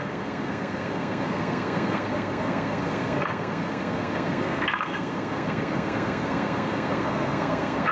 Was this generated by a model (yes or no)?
yes